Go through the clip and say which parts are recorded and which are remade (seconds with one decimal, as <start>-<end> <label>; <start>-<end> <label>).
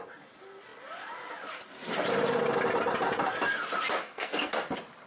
0.0-4.0 recorded; 4.0-4.5 remade; 4.5-5.1 recorded